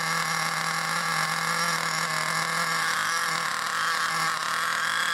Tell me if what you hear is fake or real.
real